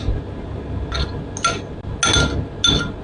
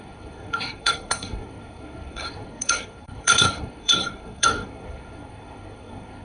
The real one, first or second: first